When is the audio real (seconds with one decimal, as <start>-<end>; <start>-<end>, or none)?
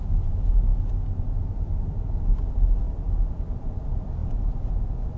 0.0-5.2